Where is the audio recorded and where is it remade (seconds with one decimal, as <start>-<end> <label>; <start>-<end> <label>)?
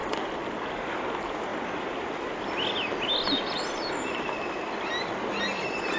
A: 0.0-6.0 recorded